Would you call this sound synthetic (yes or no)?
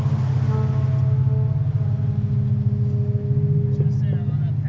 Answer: no